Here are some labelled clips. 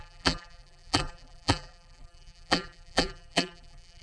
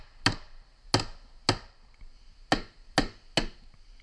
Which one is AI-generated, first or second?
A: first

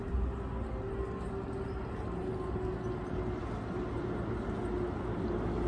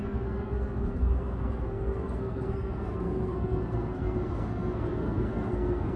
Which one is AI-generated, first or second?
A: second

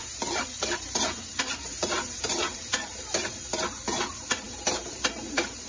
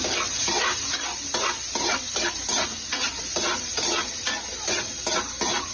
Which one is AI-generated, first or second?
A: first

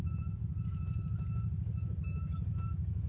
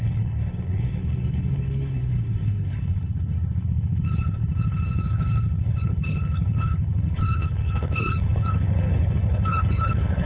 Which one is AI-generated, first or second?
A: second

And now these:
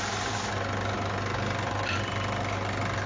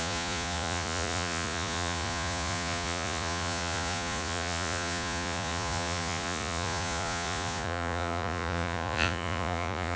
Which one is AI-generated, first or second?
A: second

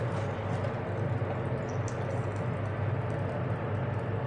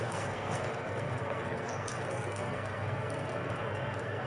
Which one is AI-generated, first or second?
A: second